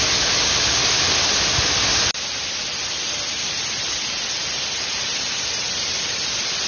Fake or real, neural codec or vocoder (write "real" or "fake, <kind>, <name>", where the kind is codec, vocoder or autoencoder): real